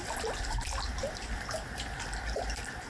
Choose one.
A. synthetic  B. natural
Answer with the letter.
B